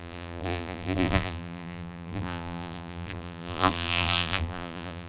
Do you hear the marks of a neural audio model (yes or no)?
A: yes